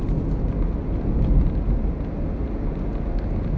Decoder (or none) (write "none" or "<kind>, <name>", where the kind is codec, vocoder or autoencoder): none